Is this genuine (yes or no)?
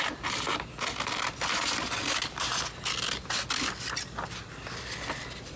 yes